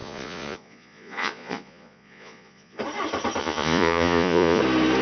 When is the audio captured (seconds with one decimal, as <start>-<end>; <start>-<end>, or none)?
2.8-3.4; 4.6-5.0